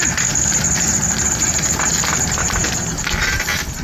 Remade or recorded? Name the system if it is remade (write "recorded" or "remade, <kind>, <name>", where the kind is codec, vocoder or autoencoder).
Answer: recorded